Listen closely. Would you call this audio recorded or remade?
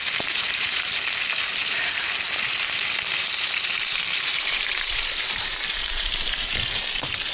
remade